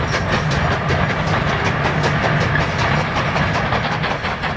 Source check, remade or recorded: recorded